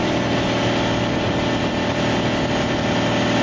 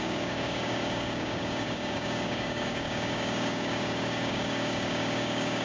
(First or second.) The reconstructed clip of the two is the second